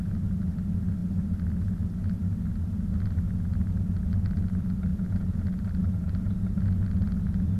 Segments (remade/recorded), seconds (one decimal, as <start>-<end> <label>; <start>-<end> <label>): 0.0-4.9 recorded; 4.9-5.4 remade; 5.4-7.6 recorded